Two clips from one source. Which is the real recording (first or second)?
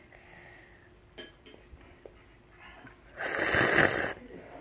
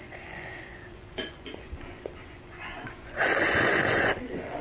first